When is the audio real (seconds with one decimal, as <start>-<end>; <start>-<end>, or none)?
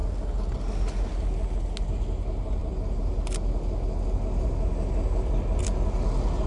0.6-6.5